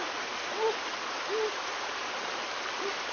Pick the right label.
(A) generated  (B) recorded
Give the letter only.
B